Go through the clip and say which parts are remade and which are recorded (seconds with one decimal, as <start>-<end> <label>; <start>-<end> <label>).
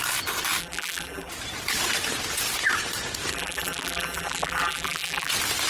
0.0-0.6 recorded; 0.6-1.3 remade; 1.3-3.3 recorded; 3.3-5.3 remade; 5.3-5.7 recorded